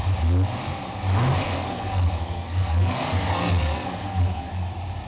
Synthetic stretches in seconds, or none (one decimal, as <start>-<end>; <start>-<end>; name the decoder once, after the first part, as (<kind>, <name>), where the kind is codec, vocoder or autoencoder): 1.4-4.5 (codec, SNAC)